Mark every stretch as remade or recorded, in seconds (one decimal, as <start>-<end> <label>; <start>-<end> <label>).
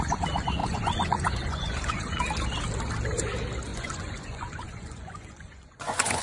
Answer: 0.0-0.6 recorded; 0.6-2.2 remade; 2.2-3.7 recorded; 3.7-6.2 remade